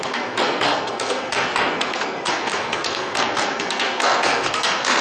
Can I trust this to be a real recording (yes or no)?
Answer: no